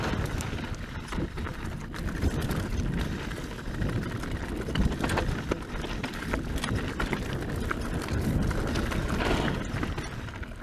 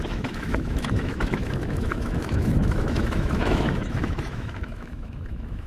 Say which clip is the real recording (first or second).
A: first